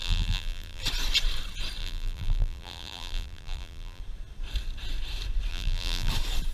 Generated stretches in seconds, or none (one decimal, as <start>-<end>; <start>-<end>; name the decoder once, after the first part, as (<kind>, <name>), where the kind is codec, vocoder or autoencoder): 0.0-0.8 (vocoder, BigVGAN v2); 1.8-4.0; 5.5-6.1